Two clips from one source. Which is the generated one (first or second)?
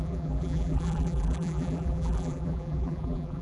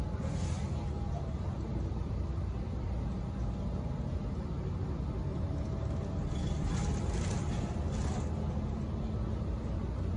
first